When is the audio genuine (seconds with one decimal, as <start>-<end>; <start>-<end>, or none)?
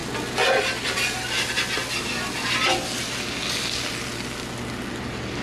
0.0-5.4